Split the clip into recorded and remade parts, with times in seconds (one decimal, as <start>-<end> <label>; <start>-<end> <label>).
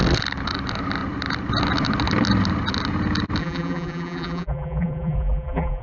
0.0-3.4 recorded; 3.4-5.8 remade